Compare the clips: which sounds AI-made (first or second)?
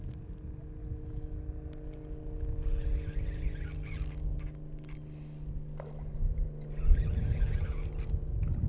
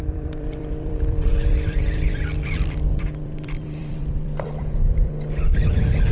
second